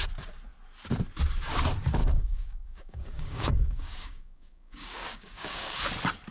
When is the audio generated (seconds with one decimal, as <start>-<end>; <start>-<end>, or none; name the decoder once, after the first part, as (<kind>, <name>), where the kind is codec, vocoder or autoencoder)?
2.0-5.8 (codec, DAC)